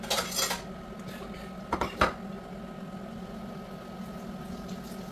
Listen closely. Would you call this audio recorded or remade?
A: recorded